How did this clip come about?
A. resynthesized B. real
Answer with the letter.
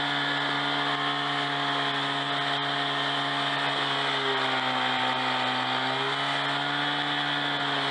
B